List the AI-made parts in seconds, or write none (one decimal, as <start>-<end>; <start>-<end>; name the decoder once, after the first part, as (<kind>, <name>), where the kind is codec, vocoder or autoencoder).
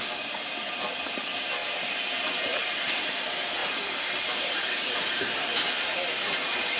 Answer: 1.6-3.1 (vocoder, BigVGAN v2); 3.6-6.8